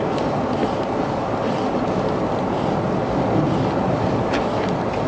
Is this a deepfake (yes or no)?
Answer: no